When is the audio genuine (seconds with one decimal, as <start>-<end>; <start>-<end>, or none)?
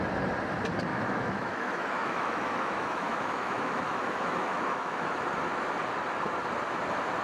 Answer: 0.0-0.9; 5.2-7.2